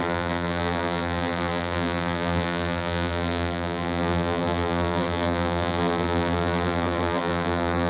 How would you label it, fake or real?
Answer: fake